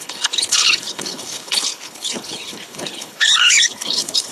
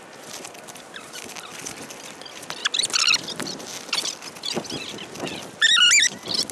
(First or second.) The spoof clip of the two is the first